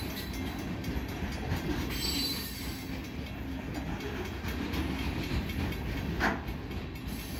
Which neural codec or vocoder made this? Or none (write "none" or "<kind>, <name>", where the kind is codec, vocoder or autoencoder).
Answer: none